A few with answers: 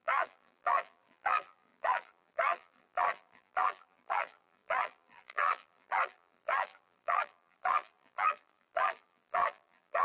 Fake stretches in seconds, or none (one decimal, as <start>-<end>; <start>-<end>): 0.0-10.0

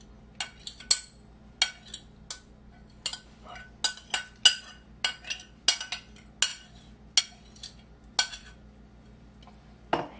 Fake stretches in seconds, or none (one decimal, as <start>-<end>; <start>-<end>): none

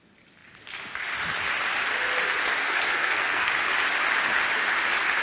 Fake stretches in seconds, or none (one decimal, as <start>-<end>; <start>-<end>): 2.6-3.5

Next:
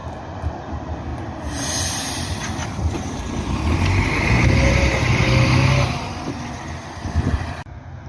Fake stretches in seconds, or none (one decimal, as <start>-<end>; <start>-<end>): none

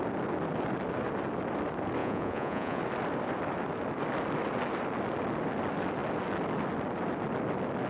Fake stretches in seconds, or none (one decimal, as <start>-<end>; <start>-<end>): 2.0-2.8

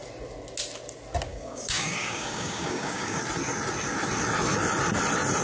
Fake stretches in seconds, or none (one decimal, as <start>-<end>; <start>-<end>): 1.3-3.2